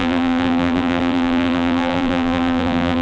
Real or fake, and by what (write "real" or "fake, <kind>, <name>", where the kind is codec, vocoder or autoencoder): fake, vocoder, BigVGAN v2